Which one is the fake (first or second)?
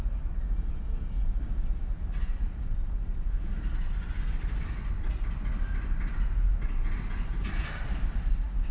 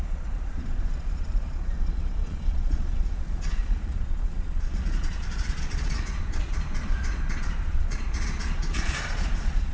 second